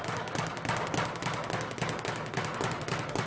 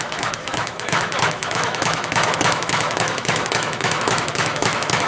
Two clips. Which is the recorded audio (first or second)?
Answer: first